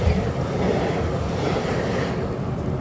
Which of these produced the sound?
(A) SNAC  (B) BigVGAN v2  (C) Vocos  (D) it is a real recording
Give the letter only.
D